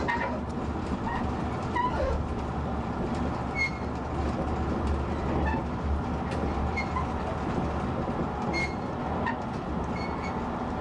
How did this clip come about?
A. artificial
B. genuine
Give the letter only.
B